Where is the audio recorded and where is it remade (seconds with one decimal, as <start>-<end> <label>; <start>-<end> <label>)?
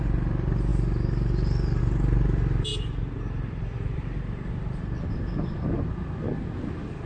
0.0-2.7 recorded; 2.7-4.8 remade; 4.8-7.1 recorded